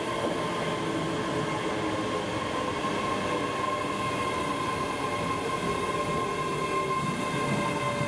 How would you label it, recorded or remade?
recorded